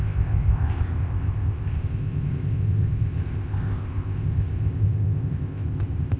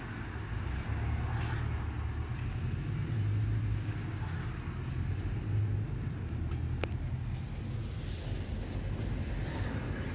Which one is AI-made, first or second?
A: first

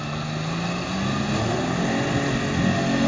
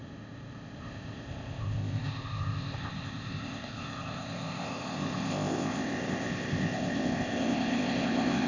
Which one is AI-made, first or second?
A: second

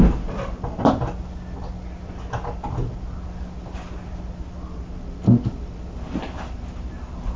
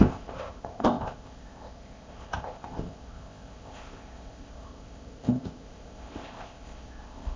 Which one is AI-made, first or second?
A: second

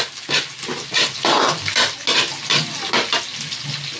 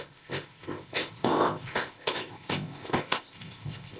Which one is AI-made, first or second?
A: second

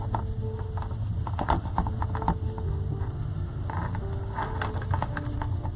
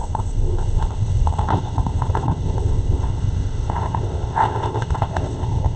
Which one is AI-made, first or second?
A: second